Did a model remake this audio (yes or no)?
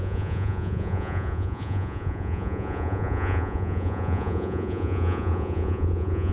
yes